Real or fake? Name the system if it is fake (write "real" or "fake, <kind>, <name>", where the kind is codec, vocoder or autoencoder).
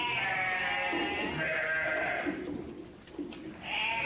real